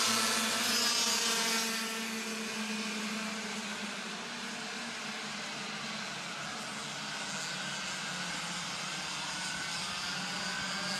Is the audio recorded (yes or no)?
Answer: yes